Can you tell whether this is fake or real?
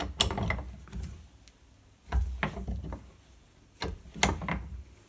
real